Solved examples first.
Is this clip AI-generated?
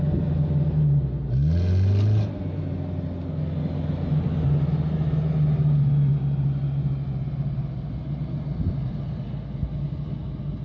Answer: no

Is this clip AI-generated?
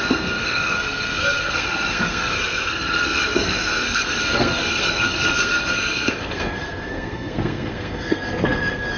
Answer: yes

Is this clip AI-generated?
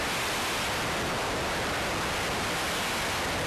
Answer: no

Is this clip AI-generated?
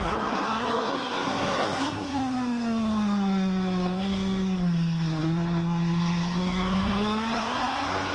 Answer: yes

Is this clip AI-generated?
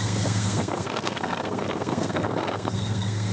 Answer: yes